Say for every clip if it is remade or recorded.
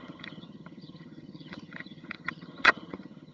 remade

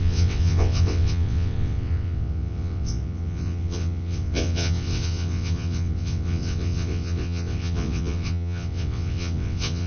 remade